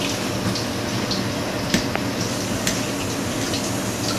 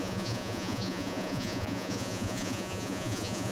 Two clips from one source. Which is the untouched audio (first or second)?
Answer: first